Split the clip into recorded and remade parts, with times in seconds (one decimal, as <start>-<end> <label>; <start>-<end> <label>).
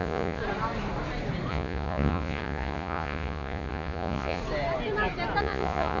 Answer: 0.0-0.4 remade; 0.4-1.5 recorded; 1.5-4.4 remade; 4.4-5.4 recorded; 5.4-6.0 remade